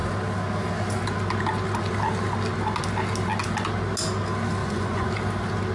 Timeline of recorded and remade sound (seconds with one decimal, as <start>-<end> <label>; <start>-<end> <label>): 0.0-4.6 recorded; 4.6-5.1 remade; 5.1-5.7 recorded